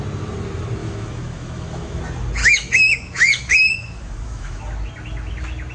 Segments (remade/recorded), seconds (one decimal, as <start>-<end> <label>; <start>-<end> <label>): 0.0-0.8 recorded; 0.8-2.0 remade; 2.0-2.4 recorded; 2.4-4.6 remade; 4.6-5.7 recorded